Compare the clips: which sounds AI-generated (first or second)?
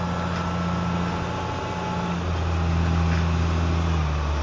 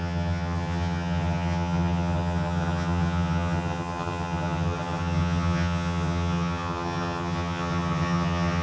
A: second